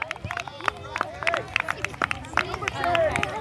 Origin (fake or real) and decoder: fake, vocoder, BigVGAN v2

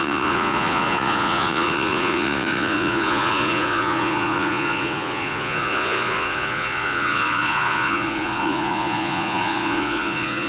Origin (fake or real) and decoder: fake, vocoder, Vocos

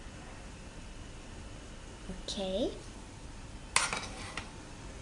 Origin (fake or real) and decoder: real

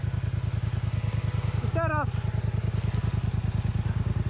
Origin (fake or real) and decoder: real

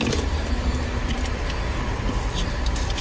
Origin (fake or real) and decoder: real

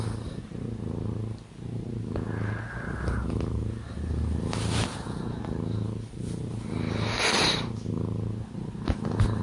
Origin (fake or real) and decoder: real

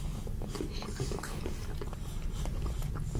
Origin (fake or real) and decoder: real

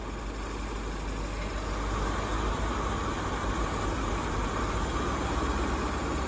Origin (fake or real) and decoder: real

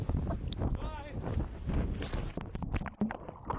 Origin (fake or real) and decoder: real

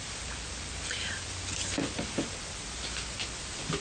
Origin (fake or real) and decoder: real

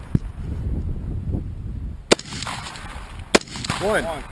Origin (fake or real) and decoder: real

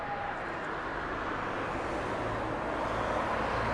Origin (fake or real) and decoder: real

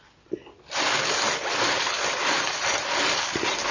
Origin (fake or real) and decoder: real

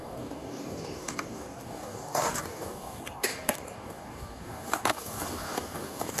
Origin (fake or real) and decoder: fake, codec, DAC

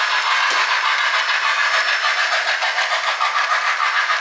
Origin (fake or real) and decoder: real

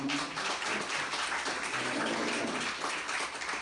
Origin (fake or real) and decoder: real